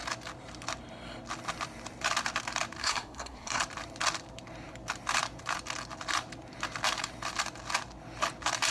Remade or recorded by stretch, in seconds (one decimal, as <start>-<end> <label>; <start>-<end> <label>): 0.0-2.8 recorded; 2.8-3.6 remade; 3.6-8.7 recorded